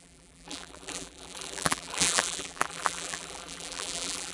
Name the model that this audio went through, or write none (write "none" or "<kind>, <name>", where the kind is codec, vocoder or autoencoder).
vocoder, BigVGAN v2